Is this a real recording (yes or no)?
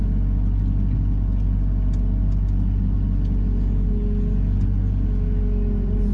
yes